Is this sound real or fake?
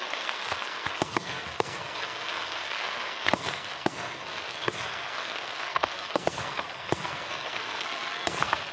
fake